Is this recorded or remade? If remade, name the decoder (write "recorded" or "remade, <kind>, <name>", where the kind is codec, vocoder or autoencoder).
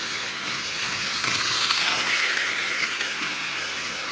remade, codec, SNAC